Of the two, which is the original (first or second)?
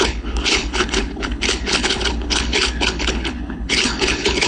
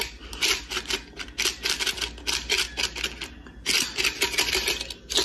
second